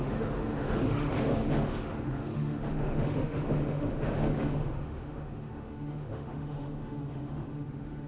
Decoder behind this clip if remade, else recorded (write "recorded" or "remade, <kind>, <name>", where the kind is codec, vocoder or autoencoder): remade, autoencoder, DAC-VAE